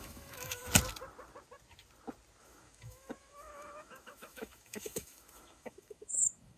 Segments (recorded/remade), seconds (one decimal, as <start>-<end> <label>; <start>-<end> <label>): 0.0-0.6 remade; 0.6-2.4 recorded; 2.4-6.6 remade